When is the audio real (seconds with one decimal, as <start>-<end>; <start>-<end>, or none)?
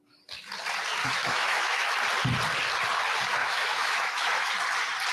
0.0-1.0; 1.9-3.4; 4.5-5.1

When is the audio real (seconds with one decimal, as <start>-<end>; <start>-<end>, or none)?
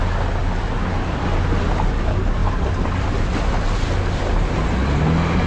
0.0-5.5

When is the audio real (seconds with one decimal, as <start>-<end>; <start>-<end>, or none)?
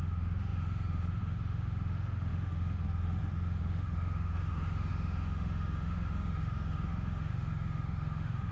none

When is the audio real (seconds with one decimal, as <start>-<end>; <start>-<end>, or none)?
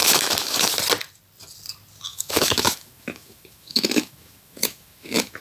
0.7-2.1